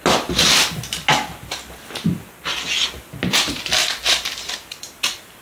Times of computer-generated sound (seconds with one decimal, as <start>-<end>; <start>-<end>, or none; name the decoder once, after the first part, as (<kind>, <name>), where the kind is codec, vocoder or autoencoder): 3.8-5.0 (vocoder, BigVGAN v2)